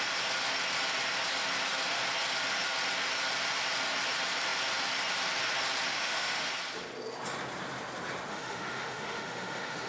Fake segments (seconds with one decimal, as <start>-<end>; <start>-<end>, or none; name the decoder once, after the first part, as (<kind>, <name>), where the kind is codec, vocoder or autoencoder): 5.9-6.5 (autoencoder, DAC-VAE); 8.3-9.9